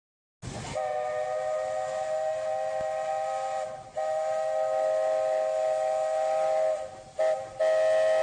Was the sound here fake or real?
real